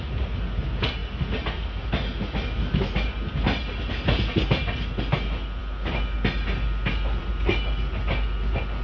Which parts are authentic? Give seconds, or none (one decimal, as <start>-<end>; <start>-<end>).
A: 0.0-8.8

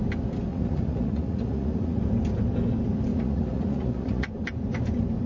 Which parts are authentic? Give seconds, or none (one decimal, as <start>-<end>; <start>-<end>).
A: 0.0-0.5; 2.0-3.1; 4.3-5.3

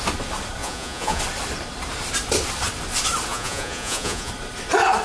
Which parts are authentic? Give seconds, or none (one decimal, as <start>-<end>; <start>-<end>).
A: 0.0-0.6; 1.2-3.3; 4.3-5.0

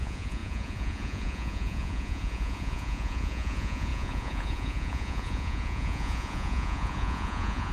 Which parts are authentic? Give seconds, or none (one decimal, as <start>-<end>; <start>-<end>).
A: none

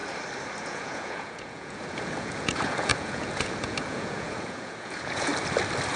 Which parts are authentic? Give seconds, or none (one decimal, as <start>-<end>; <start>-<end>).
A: 0.0-0.6; 5.3-6.0